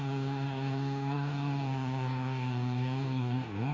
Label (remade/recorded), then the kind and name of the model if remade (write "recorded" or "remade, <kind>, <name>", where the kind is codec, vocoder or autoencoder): remade, codec, DAC